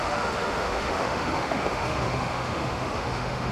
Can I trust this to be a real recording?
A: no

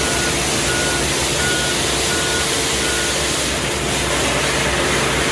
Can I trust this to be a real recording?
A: yes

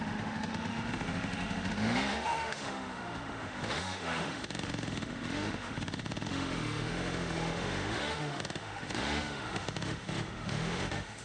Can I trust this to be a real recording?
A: no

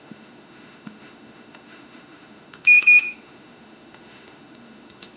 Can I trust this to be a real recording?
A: no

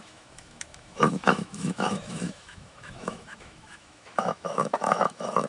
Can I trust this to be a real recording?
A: no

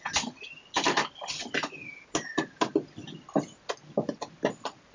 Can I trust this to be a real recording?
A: yes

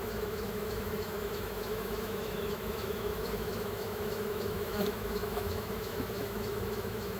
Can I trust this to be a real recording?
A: no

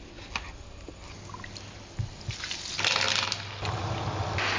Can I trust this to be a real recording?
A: yes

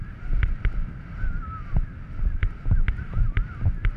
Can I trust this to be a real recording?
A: yes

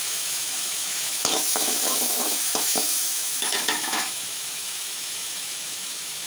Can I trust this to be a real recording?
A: no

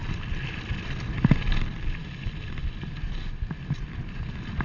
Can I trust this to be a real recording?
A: yes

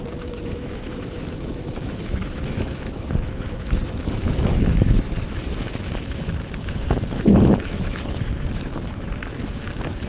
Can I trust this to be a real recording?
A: no